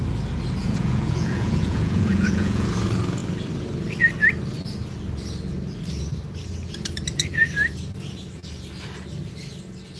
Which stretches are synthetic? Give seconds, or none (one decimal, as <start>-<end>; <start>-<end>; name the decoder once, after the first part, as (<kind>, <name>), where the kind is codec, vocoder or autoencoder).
0.6-2.7 (vocoder, Vocos)